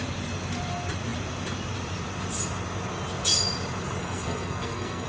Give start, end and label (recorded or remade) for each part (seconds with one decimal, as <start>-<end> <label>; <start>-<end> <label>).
0.0-4.0 recorded; 4.0-5.1 remade